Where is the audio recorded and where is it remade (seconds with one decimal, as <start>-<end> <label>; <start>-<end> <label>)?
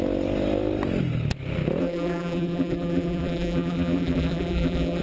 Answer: 0.0-1.8 recorded; 1.8-5.0 remade